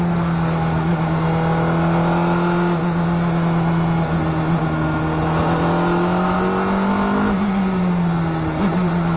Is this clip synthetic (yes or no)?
no